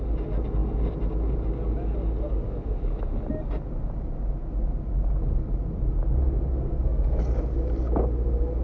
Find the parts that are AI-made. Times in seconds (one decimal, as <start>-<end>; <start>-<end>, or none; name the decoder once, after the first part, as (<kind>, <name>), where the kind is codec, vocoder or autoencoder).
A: 6.5-7.2 (codec, SNAC)